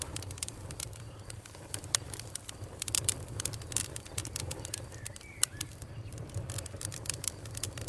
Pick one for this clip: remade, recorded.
remade